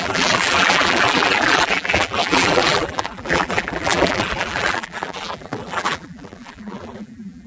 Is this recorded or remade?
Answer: remade